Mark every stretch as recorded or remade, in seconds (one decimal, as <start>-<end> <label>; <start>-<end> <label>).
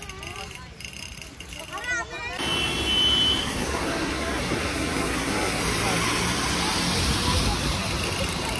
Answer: 0.0-3.4 recorded; 3.4-5.6 remade; 5.6-8.6 recorded